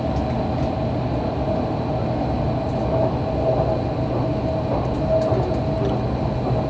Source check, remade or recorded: recorded